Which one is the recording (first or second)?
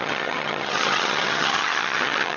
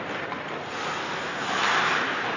second